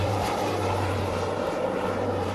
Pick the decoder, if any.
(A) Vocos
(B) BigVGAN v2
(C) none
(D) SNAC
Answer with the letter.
B